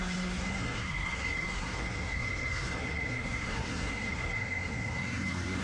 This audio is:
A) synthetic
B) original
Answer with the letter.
A